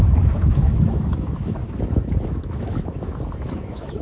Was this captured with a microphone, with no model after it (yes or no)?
no